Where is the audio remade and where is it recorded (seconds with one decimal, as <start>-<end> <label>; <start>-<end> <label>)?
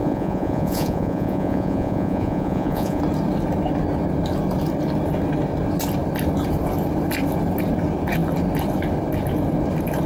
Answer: 0.0-3.0 remade; 3.0-10.1 recorded